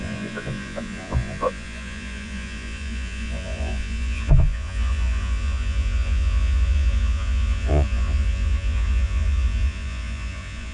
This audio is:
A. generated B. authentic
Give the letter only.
A